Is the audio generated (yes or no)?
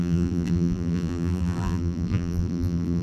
yes